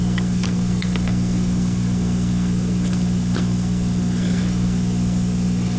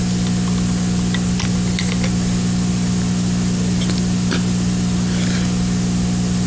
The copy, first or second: first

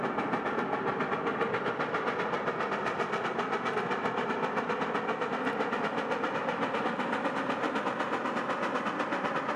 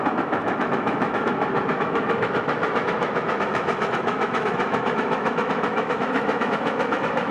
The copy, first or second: second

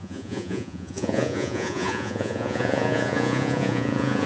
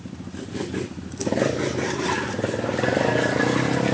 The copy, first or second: first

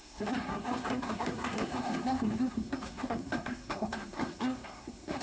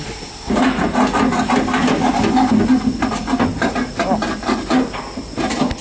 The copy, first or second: first